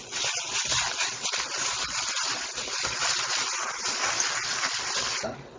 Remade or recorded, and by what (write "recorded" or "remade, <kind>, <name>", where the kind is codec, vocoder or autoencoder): recorded